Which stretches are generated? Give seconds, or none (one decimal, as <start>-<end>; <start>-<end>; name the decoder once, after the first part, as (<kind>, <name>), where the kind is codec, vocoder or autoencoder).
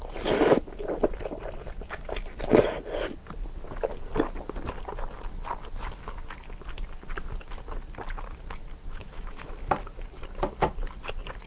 8.9-9.5 (autoencoder, DAC-VAE)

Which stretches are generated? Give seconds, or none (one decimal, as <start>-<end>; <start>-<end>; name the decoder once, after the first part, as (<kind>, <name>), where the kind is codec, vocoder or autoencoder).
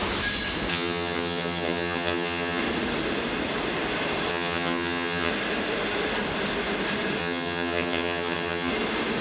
0.7-2.6 (vocoder, HiFi-GAN); 4.3-5.3; 7.2-8.7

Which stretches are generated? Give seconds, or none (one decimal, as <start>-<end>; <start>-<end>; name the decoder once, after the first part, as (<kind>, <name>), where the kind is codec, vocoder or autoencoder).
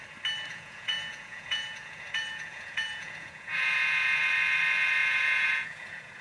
0.5-4.2 (vocoder, Vocos); 5.0-6.2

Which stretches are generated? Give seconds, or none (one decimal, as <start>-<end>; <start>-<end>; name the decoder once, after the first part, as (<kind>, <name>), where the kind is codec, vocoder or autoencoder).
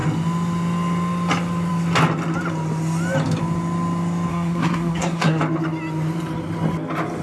4.3-5.4 (codec, SNAC)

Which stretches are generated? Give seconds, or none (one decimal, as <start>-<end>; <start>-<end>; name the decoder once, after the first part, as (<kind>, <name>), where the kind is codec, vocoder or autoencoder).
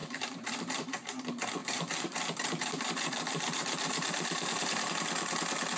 0.0-0.8 (vocoder, BigVGAN v2); 1.6-4.9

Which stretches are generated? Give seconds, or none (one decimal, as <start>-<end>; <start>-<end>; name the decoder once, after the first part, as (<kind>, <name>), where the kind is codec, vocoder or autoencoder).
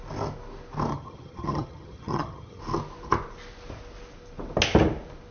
0.9-2.6 (vocoder, HiFi-GAN)